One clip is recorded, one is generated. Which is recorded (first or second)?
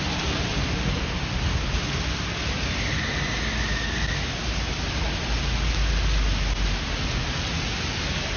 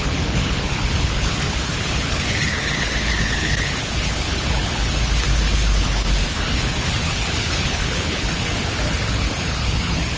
first